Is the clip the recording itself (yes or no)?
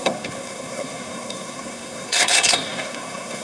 no